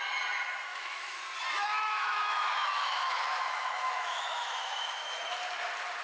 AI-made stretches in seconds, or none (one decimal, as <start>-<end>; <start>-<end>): 0.7-1.2; 1.6-5.2